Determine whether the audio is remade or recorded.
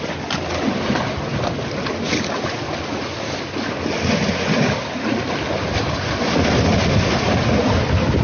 recorded